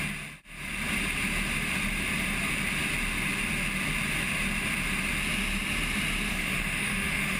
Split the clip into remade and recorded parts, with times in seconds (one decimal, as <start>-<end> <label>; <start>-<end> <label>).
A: 0.0-6.3 recorded; 6.3-7.4 remade